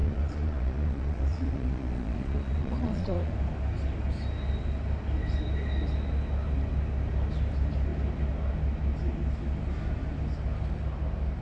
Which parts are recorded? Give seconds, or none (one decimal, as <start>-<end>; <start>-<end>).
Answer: 3.3-11.4